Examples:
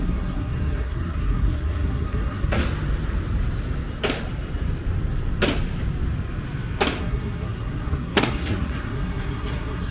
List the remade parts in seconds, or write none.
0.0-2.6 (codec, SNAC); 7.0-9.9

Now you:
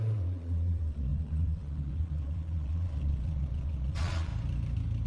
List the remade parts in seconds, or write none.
0.0-4.3 (vocoder, Vocos)

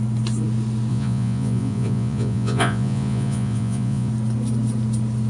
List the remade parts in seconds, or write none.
0.9-4.1 (vocoder, Vocos)

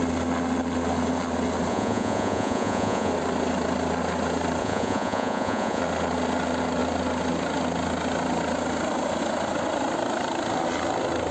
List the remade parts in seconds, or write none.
1.7-3.1 (vocoder, Vocos); 4.6-5.8

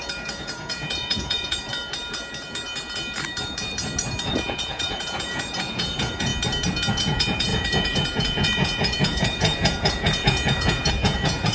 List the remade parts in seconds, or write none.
0.0-1.7 (vocoder, Vocos); 4.2-6.3; 6.9-11.5

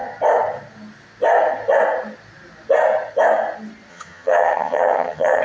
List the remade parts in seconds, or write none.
3.9-5.4 (vocoder, HiFi-GAN)

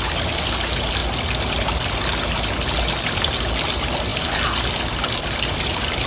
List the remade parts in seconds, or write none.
none